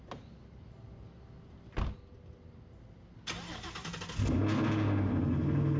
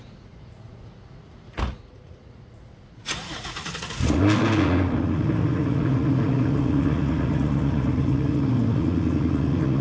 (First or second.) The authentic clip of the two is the first